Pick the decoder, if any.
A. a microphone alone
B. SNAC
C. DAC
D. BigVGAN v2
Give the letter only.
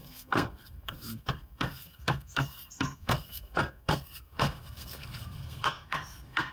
B